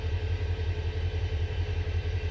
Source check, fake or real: fake